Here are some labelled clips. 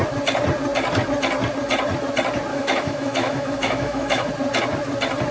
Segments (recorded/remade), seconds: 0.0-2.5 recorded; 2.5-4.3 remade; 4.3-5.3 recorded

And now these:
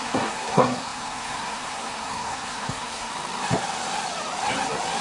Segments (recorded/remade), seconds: 0.0-3.1 remade; 3.1-5.0 recorded

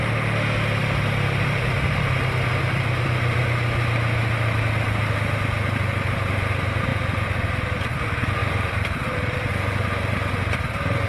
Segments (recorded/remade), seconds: 0.0-0.8 recorded; 0.8-2.1 remade; 2.1-2.5 recorded; 2.5-3.4 remade; 3.4-8.4 recorded; 8.4-9.5 remade; 9.5-11.1 recorded

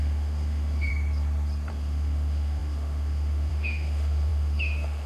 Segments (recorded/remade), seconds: 0.0-0.9 remade; 0.9-1.7 recorded; 1.7-5.1 remade

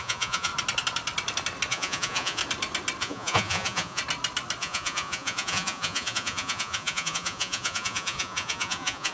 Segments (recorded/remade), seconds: 0.0-0.5 remade; 0.5-1.7 recorded; 1.7-2.4 remade; 2.4-3.0 recorded; 3.0-4.0 remade; 4.0-4.6 recorded; 4.6-9.1 remade

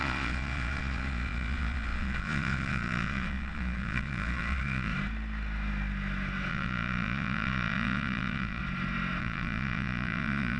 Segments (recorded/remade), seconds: 0.0-4.9 remade; 4.9-6.5 recorded; 6.5-8.6 remade; 8.6-9.2 recorded; 9.2-10.6 remade

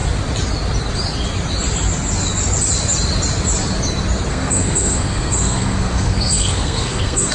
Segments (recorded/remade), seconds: 0.0-4.3 recorded; 4.3-7.3 remade

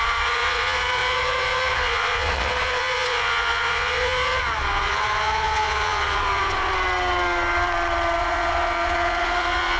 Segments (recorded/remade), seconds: 0.0-6.7 remade; 6.7-8.2 recorded; 8.2-9.8 remade